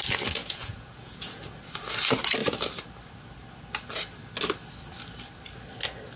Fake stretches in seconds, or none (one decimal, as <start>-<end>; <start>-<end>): 0.4-1.4